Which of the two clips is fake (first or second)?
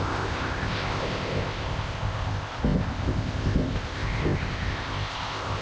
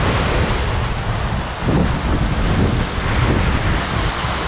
first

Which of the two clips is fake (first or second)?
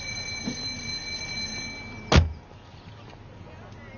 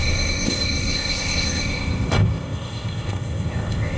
second